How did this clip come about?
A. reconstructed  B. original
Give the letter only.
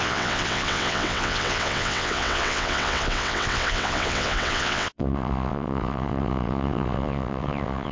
A